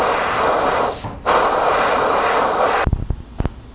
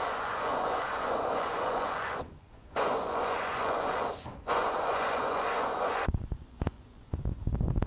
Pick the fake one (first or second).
second